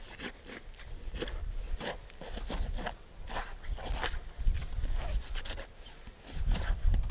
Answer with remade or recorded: recorded